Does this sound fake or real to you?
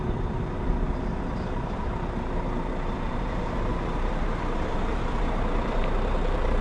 fake